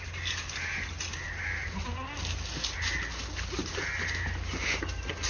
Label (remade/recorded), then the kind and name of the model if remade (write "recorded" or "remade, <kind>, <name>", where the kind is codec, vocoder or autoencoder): recorded